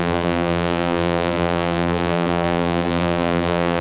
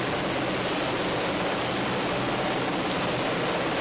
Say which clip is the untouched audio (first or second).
second